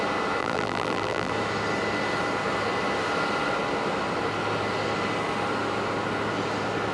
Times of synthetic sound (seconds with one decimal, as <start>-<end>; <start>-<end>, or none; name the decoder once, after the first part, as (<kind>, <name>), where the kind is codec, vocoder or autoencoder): 0.4-1.3 (vocoder, BigVGAN v2)